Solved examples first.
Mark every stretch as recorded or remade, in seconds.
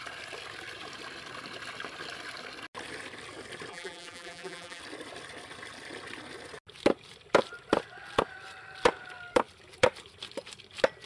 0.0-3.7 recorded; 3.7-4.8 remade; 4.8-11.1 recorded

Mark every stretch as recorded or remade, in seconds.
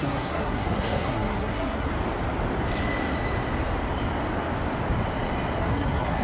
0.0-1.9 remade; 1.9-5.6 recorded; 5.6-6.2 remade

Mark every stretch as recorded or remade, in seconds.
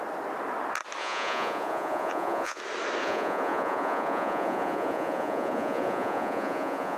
0.0-1.0 recorded; 1.0-2.6 remade; 2.6-3.0 recorded; 3.0-7.0 remade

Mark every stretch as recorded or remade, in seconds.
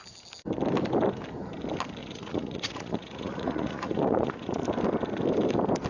0.0-2.0 recorded; 2.0-4.6 remade; 4.6-5.9 recorded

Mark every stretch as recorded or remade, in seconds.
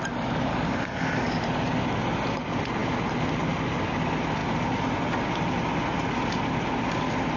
0.0-0.5 recorded; 0.5-1.4 remade; 1.4-7.4 recorded